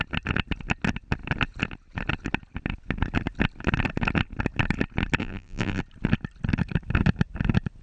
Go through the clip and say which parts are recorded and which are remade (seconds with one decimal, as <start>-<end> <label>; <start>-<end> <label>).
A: 0.0-5.2 recorded; 5.2-5.8 remade; 5.8-7.8 recorded